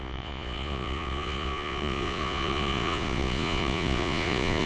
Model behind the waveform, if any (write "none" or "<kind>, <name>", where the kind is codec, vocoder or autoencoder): vocoder, Vocos